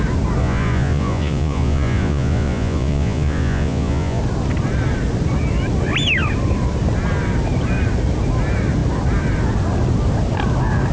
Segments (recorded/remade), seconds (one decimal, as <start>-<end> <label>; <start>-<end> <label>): 0.0-0.4 recorded; 0.4-4.2 remade; 4.2-10.9 recorded